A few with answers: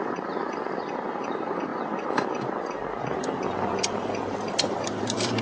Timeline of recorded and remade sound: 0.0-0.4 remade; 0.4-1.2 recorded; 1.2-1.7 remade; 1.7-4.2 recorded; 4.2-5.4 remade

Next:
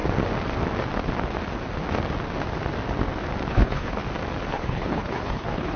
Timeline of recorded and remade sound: 0.0-3.5 recorded; 3.5-4.0 remade; 4.0-4.5 recorded; 4.5-5.8 remade

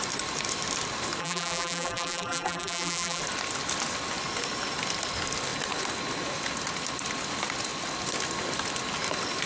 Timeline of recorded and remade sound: 0.0-1.2 recorded; 1.2-3.2 remade; 3.2-9.5 recorded